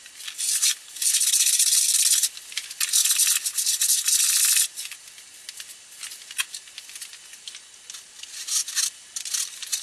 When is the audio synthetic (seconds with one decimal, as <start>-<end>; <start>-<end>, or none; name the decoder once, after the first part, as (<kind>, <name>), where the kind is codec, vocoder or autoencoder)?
none